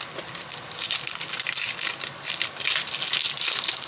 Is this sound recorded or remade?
recorded